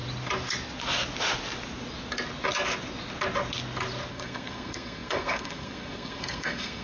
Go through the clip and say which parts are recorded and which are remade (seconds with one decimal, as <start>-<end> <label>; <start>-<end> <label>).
0.0-4.1 recorded; 4.1-6.8 remade